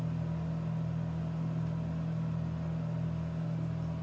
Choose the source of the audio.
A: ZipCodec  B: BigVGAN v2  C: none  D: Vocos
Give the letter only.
C